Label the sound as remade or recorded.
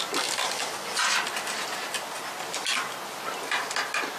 recorded